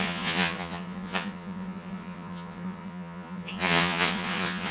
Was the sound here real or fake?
fake